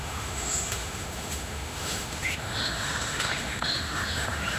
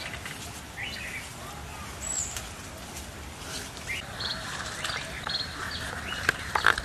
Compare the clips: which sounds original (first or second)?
second